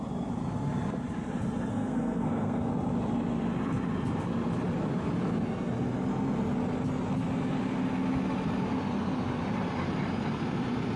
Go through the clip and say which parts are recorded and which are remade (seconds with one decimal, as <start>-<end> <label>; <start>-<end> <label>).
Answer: 0.0-1.7 recorded; 1.7-2.7 remade; 2.7-11.0 recorded